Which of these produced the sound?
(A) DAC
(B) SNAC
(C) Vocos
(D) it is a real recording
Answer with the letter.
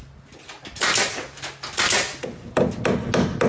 D